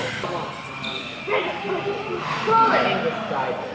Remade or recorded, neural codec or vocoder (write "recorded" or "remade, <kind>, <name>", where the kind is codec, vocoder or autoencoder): recorded